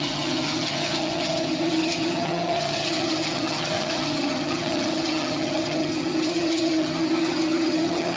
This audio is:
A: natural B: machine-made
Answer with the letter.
B